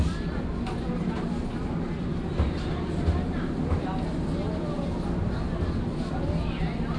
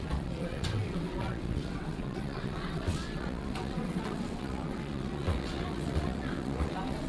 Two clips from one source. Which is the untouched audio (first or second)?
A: first